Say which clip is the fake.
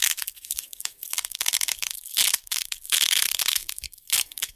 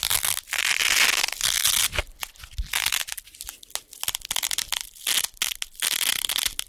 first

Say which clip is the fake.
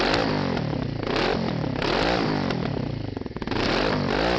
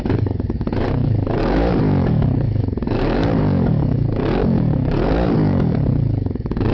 second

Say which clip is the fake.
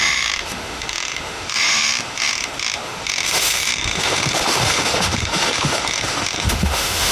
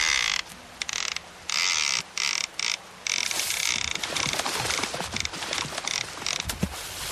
first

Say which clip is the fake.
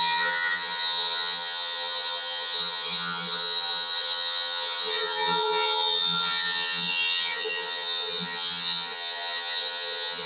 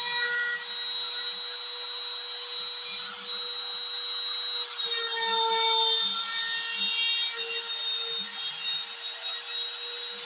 first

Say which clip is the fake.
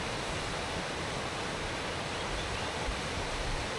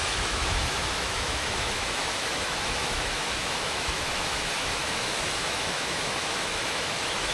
second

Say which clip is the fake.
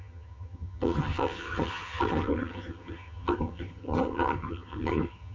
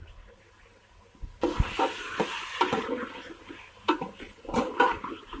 first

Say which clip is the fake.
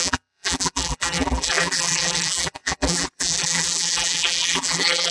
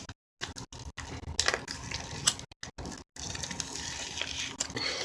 first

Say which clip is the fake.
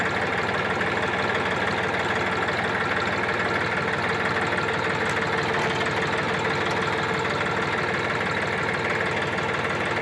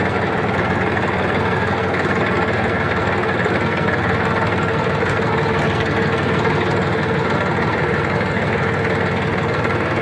second